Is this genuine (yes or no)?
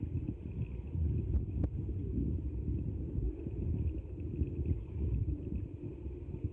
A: yes